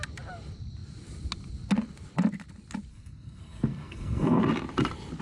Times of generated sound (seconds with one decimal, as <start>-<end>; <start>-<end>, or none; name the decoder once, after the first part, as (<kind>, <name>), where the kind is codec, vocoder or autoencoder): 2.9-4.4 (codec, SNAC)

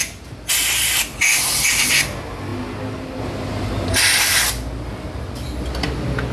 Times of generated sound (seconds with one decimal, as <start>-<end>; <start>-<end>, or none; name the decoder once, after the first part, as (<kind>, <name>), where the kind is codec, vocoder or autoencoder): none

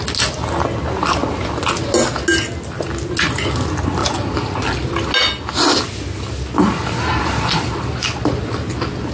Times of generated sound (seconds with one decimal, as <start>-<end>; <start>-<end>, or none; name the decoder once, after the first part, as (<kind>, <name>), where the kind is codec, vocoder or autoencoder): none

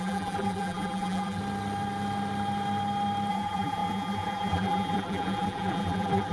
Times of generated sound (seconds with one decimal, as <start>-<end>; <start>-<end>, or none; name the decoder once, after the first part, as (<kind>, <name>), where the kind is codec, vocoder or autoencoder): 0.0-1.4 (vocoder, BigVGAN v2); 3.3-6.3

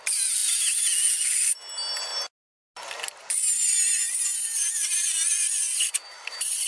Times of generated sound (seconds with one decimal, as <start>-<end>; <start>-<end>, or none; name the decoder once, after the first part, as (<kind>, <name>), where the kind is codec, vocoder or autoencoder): none